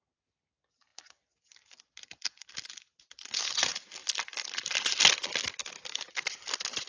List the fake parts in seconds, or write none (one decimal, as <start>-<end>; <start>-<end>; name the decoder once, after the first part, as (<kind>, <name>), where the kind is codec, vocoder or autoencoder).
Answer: none